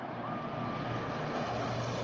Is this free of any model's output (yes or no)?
yes